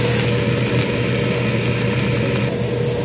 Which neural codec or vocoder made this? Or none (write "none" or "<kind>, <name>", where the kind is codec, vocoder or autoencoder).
none